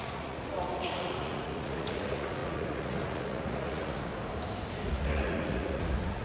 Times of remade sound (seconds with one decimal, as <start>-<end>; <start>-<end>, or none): 0.0-4.1; 4.9-6.2